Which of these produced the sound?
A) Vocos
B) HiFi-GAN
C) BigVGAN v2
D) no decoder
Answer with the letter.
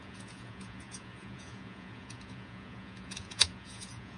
A